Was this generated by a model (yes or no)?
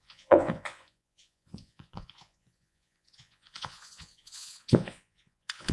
yes